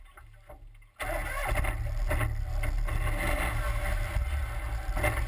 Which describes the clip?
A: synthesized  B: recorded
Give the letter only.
B